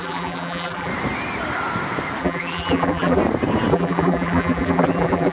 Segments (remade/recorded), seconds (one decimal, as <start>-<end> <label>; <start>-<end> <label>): 0.0-0.9 remade; 0.9-2.2 recorded; 2.2-3.2 remade; 3.2-3.7 recorded; 3.7-5.3 remade